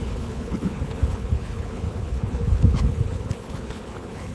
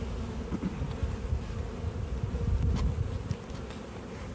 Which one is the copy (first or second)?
first